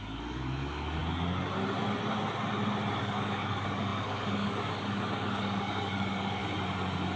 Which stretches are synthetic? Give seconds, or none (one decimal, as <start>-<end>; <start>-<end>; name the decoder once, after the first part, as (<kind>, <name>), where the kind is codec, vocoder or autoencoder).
0.0-1.0 (codec, DAC); 3.0-6.4